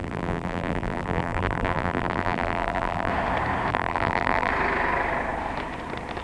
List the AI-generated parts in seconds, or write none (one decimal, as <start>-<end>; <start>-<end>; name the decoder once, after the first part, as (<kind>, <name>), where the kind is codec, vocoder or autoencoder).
0.0-3.1 (vocoder, BigVGAN v2); 3.7-4.5